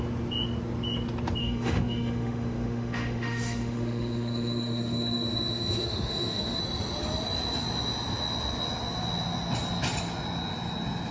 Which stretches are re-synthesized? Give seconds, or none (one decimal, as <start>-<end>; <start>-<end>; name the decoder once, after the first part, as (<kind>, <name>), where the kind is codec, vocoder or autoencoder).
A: 1.4-6.6 (autoencoder, DAC-VAE)